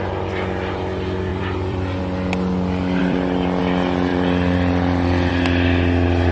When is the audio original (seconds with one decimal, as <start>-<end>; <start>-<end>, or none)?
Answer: 0.0-1.3; 2.0-3.0; 3.6-4.1; 5.3-6.3